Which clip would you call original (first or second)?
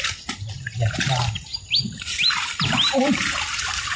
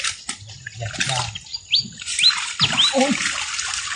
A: second